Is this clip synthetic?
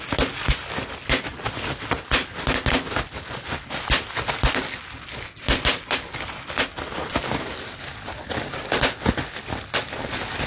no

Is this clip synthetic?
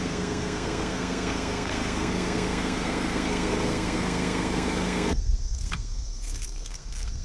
yes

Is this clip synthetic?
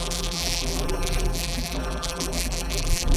yes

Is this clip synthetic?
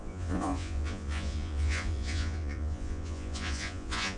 yes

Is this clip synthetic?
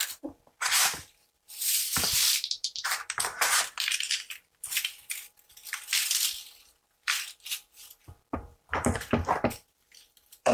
yes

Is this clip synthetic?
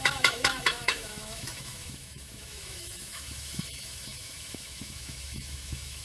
yes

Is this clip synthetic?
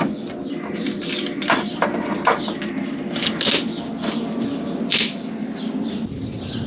no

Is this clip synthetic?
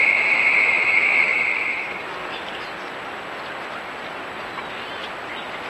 no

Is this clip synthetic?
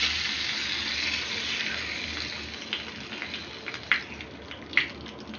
no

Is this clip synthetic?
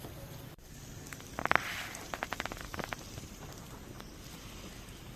yes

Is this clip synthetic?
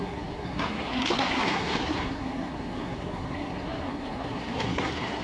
yes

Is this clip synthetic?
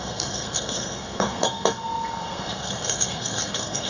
yes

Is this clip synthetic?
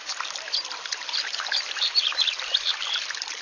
yes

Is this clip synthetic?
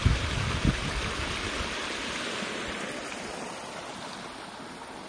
no